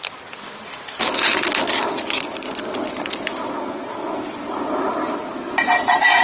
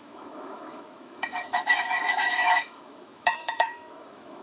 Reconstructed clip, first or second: second